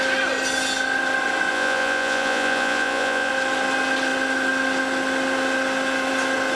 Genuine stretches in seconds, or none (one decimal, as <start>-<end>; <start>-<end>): 0.0-1.5; 3.3-6.6